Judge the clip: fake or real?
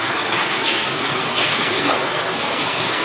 fake